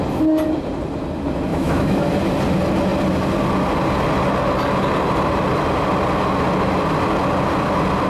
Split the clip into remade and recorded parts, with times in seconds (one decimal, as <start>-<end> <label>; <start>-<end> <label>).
0.0-1.5 recorded; 1.5-2.2 remade; 2.2-8.1 recorded